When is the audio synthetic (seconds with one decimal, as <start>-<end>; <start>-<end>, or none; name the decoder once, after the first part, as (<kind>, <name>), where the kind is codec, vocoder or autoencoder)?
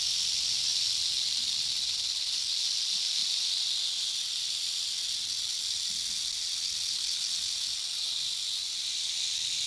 none